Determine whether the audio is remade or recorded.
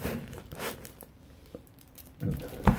remade